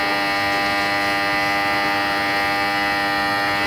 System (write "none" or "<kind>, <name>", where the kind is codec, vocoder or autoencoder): none